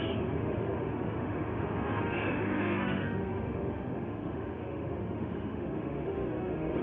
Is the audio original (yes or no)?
no